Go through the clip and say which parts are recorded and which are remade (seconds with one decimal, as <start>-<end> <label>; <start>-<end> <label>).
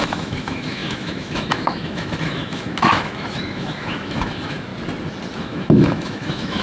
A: 0.0-4.7 remade; 4.7-5.4 recorded; 5.4-6.6 remade